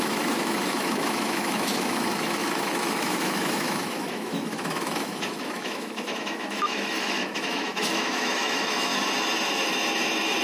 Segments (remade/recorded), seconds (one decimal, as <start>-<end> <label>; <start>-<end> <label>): 0.0-8.9 remade; 8.9-10.4 recorded